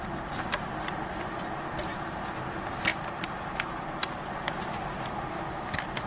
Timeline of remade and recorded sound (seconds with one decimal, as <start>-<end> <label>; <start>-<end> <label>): 0.0-2.9 recorded; 2.9-4.3 remade; 4.3-6.1 recorded